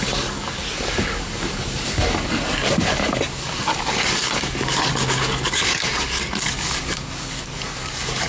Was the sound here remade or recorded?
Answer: remade